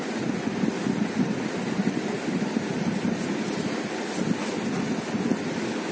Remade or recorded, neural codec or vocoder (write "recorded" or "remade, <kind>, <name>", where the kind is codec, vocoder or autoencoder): recorded